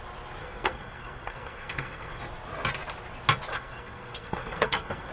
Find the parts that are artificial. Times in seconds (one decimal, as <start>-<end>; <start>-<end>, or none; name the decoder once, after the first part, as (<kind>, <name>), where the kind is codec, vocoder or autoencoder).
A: 0.4-2.2 (codec, SNAC); 3.5-5.1